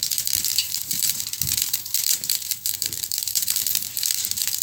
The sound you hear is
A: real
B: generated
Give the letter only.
B